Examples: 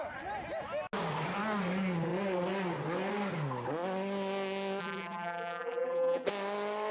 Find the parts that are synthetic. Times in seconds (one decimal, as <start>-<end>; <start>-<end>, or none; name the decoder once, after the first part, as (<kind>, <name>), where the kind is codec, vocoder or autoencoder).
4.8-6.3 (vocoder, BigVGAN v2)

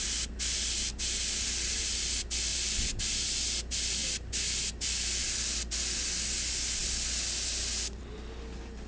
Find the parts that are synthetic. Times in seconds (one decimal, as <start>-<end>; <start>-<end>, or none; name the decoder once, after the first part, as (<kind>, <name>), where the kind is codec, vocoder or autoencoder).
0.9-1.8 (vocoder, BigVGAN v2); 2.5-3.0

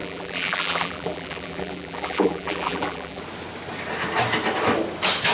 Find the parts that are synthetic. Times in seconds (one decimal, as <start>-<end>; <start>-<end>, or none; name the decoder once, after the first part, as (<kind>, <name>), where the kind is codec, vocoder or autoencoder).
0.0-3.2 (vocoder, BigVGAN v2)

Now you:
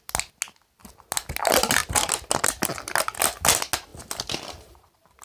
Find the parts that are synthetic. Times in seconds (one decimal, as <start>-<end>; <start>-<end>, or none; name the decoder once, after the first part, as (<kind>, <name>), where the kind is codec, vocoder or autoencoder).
3.9-5.2 (vocoder, BigVGAN v2)

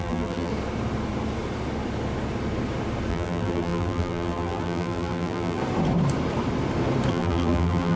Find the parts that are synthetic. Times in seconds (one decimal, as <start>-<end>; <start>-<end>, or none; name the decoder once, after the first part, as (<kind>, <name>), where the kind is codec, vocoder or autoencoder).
0.0-0.5 (vocoder, BigVGAN v2); 3.1-5.6; 7.1-8.0